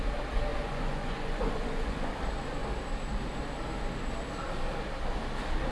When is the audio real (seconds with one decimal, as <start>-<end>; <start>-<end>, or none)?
0.0-0.5; 2.1-5.7